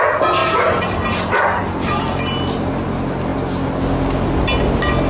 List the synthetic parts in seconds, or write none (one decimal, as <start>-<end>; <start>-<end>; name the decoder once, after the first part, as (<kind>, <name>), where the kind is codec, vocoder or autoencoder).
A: none